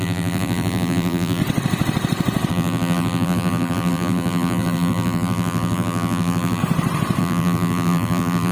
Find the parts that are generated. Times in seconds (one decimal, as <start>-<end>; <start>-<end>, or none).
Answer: 0.0-1.4; 2.5-6.6; 7.2-8.5